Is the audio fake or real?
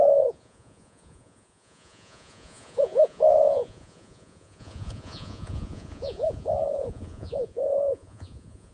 fake